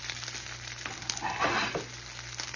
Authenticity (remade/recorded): recorded